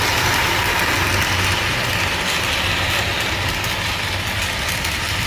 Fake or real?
real